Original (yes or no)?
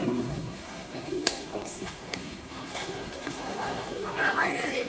no